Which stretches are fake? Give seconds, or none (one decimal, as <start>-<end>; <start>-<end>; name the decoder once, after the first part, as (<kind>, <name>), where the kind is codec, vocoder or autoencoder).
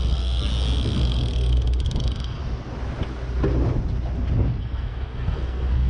0.0-0.5 (codec, SNAC); 1.0-2.4; 4.6-5.9